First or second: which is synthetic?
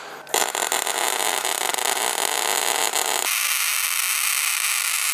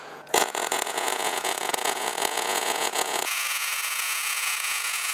second